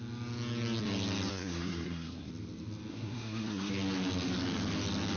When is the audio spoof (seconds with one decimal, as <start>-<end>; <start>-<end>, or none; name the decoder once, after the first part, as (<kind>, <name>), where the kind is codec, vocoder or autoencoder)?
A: 1.3-2.3 (codec, SNAC); 2.9-3.7